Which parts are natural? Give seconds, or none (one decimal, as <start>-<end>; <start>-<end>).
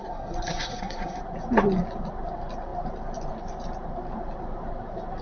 1.2-5.2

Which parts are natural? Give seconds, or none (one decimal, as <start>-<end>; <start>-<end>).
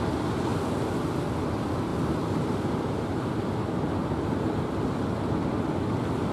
0.0-6.3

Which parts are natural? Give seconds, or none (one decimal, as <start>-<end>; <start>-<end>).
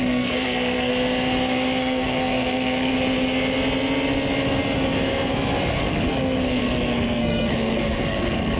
0.9-1.8; 2.9-5.7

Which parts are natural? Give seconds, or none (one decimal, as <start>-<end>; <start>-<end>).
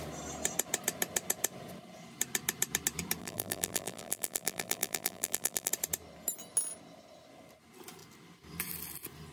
0.0-3.2; 5.7-9.3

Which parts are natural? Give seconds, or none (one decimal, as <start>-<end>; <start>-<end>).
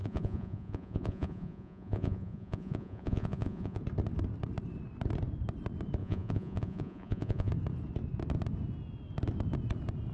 3.8-6.0; 7.5-10.1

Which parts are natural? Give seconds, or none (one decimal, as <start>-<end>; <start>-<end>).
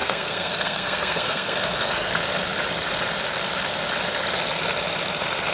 2.1-5.5